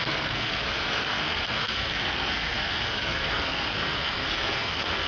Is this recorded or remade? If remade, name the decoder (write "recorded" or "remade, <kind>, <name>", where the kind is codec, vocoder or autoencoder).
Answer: remade, codec, SNAC